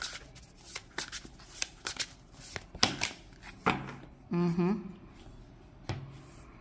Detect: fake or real real